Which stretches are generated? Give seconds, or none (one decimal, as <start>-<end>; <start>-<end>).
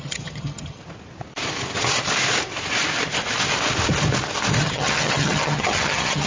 0.0-0.8; 4.6-6.3